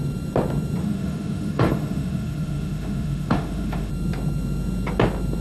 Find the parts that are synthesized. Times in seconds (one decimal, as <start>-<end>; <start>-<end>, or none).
0.8-3.9